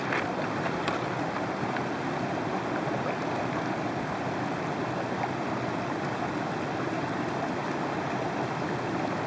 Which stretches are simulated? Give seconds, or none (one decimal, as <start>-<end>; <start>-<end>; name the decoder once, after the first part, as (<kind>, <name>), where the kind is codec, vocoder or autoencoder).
none

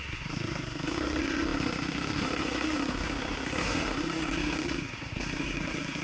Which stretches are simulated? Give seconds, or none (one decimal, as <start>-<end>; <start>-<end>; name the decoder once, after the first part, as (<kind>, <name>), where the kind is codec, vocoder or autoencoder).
0.0-6.0 (codec, SNAC)

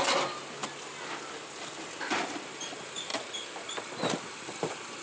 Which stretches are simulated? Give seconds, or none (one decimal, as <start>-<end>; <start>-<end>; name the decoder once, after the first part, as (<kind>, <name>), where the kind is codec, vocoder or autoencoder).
none